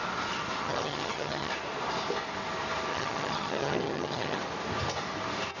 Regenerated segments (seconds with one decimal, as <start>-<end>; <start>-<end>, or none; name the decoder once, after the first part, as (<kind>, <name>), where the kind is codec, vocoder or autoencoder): 0.6-1.5 (vocoder, HiFi-GAN); 2.9-4.4

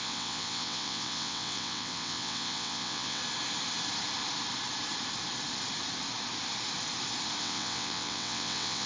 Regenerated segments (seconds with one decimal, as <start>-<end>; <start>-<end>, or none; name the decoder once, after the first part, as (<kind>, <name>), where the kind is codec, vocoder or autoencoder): 0.0-3.2 (vocoder, WaveNeXt); 7.4-8.9

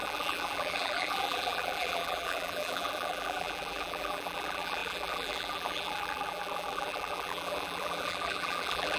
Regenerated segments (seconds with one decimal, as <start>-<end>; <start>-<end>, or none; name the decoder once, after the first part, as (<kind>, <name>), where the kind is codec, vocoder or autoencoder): 0.0-9.0 (vocoder, BigVGAN v2)

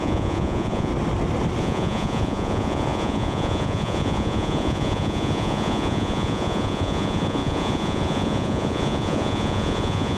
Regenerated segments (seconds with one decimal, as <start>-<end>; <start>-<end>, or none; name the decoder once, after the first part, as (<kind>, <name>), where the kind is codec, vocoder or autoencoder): 0.0-0.9 (vocoder, Vocos); 1.6-10.2

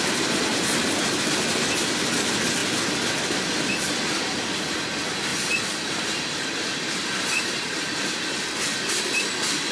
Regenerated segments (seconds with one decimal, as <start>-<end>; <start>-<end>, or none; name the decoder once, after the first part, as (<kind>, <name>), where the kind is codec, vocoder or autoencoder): 5.3-9.0 (vocoder, BigVGAN v2)